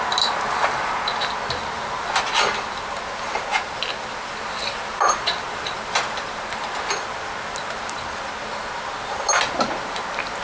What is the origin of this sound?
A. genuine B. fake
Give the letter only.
A